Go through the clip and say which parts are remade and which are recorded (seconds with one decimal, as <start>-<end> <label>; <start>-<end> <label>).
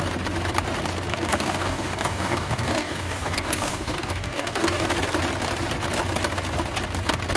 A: 0.0-1.1 recorded; 1.1-4.9 remade; 4.9-7.4 recorded